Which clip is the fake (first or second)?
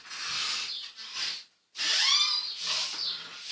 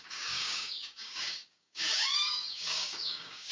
second